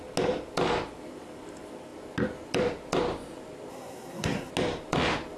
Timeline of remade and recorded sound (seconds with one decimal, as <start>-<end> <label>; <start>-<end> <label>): 0.0-3.7 recorded; 3.7-4.5 remade; 4.5-5.4 recorded